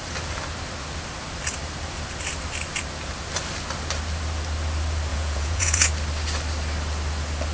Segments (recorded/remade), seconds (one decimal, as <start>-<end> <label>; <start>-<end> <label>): 0.0-5.1 recorded; 5.1-5.9 remade; 5.9-7.5 recorded